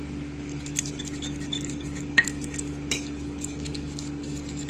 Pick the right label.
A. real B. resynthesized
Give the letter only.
B